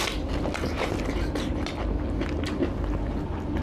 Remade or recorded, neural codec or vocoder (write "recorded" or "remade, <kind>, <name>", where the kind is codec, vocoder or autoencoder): recorded